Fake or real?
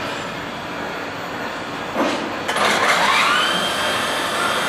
real